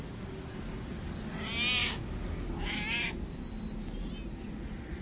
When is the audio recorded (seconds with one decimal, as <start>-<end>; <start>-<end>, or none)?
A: 0.0-5.0

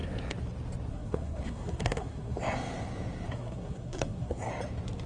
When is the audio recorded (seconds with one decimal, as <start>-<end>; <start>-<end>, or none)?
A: 0.0-0.9; 2.4-3.3; 4.5-5.1